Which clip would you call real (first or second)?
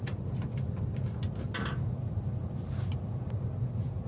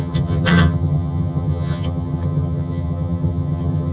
first